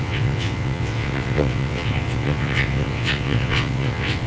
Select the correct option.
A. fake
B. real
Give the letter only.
A